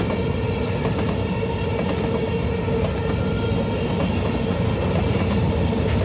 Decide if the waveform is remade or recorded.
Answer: recorded